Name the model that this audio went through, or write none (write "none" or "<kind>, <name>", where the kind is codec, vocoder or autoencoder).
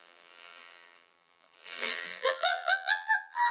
vocoder, BigVGAN v2